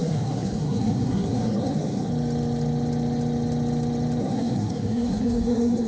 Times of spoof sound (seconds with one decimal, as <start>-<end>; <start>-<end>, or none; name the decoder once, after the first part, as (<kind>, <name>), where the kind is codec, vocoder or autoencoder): 0.0-2.1 (codec, SNAC); 4.2-5.9